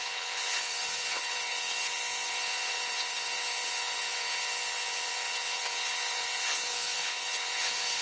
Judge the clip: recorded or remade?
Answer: remade